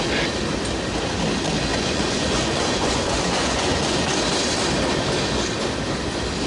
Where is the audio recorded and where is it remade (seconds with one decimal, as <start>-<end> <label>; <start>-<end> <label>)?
0.0-1.7 recorded; 1.7-4.2 remade; 4.2-6.5 recorded